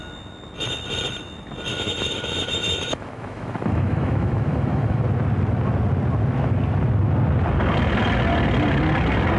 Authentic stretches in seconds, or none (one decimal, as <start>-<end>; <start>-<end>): 0.0-1.7; 5.0-9.4